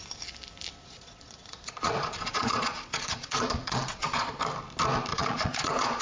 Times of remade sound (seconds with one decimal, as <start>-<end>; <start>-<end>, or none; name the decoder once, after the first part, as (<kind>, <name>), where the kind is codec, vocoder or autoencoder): 0.8-4.4 (vocoder, Vocos); 5.1-6.0